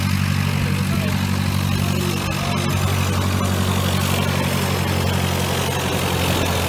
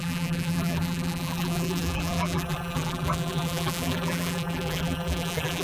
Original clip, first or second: first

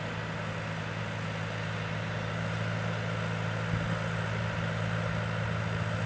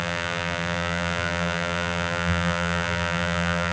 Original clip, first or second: first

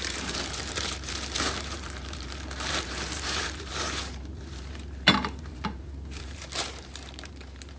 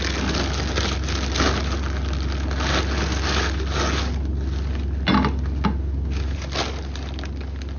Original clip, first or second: second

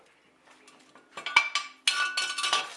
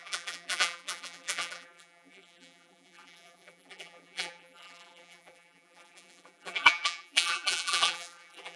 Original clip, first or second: first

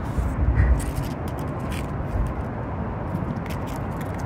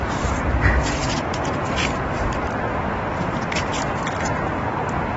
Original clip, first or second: first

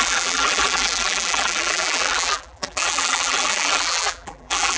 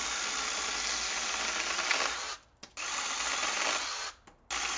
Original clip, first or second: second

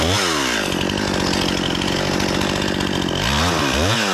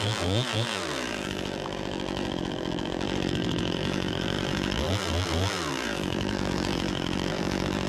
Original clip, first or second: first